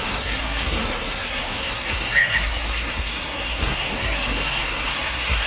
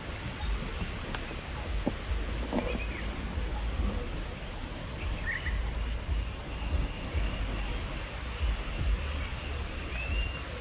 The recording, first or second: second